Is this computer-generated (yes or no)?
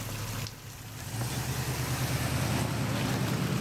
no